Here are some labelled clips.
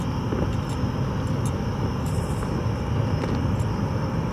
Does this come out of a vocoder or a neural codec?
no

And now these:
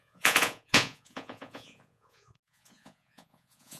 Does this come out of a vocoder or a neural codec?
yes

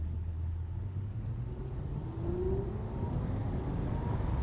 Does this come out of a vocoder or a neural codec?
no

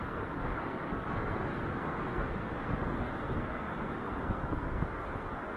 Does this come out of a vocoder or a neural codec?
yes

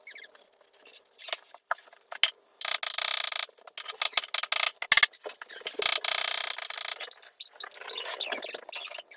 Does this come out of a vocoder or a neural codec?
no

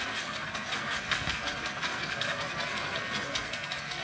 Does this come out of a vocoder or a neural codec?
yes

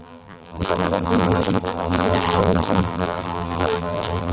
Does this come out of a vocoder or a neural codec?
yes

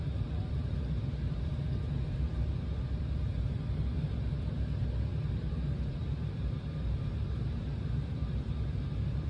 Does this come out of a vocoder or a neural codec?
yes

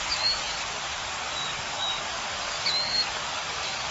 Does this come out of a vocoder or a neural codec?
yes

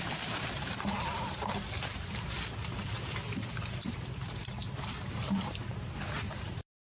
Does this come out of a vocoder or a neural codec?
yes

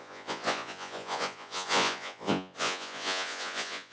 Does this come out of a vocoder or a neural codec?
yes